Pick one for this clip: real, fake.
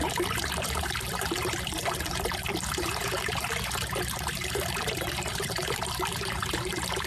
fake